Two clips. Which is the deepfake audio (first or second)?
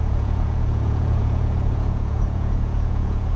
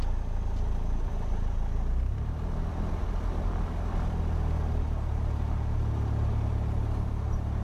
first